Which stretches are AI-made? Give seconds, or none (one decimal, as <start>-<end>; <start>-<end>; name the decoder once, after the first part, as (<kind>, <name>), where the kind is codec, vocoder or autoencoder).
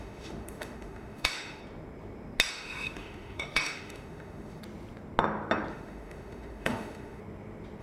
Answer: 0.0-1.6 (autoencoder, DAC-VAE); 2.5-4.6; 5.7-7.2